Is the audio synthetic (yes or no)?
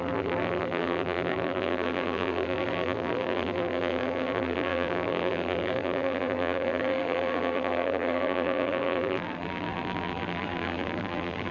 yes